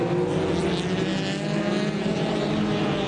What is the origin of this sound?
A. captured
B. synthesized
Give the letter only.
A